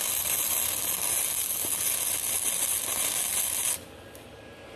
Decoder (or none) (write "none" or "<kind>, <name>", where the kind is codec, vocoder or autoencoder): none